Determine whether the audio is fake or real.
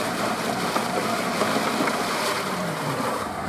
fake